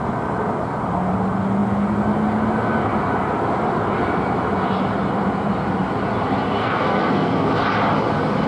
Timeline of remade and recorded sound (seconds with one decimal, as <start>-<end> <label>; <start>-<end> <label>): 0.0-6.6 recorded; 6.6-7.5 remade; 7.5-8.5 recorded